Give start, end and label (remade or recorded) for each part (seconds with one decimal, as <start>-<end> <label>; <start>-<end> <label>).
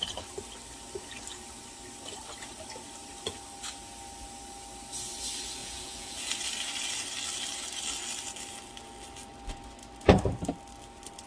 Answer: 0.0-5.6 recorded; 5.6-6.3 remade; 6.3-11.3 recorded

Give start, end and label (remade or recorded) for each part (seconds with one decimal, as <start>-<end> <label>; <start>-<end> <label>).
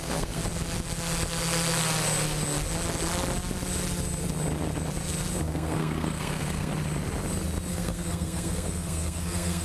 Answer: 0.0-0.4 remade; 0.4-5.4 recorded; 5.4-6.7 remade; 6.7-7.7 recorded; 7.7-9.6 remade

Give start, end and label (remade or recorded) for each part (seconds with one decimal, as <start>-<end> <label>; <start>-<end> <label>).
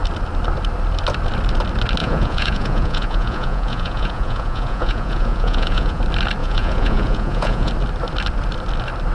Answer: 0.0-2.0 recorded; 2.0-6.0 remade; 6.0-6.4 recorded; 6.4-7.7 remade; 7.7-9.1 recorded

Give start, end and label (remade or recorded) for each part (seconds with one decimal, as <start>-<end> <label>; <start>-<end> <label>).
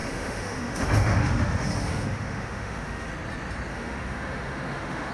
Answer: 0.0-3.1 remade; 3.1-3.7 recorded; 3.7-5.1 remade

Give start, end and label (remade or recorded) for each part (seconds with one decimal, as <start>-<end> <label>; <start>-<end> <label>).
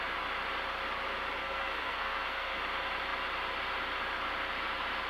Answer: 0.0-1.4 recorded; 1.4-2.6 remade; 2.6-5.1 recorded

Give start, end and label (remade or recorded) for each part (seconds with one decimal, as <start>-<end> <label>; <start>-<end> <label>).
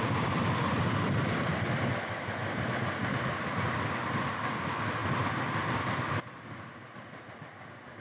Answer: 0.0-8.0 recorded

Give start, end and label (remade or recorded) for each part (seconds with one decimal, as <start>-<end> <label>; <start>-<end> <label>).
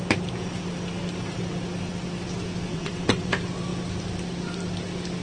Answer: 0.0-2.7 recorded; 2.7-3.3 remade; 3.3-5.2 recorded